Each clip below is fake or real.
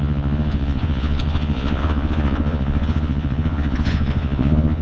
fake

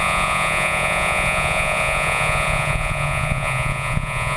fake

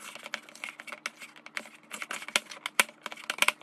real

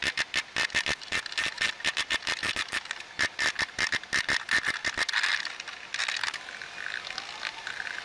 real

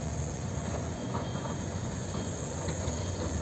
fake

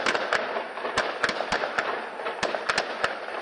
real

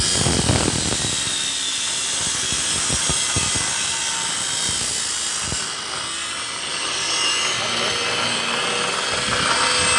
real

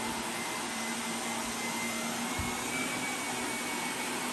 real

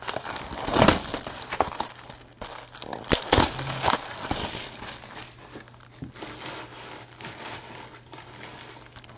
real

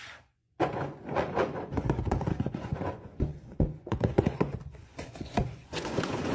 fake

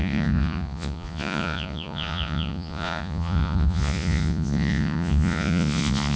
fake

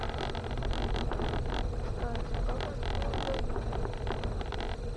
real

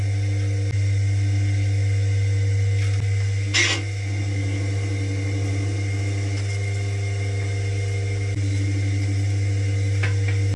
real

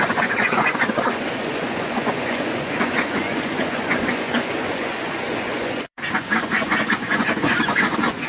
fake